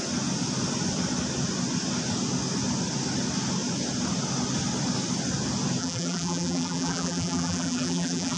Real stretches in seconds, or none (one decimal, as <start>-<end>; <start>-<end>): 0.0-5.8